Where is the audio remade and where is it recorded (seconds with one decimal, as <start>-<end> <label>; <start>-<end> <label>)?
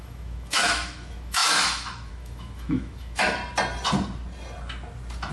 0.0-3.4 remade; 3.4-5.3 recorded